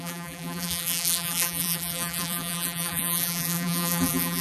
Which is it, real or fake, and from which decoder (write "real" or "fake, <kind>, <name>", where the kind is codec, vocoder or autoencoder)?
fake, vocoder, BigVGAN v2